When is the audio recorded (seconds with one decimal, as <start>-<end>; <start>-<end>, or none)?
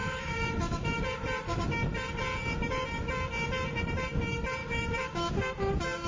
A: 1.0-4.6; 5.3-6.1